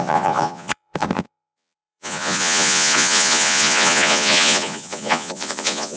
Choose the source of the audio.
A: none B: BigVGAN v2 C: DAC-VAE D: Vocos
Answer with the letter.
D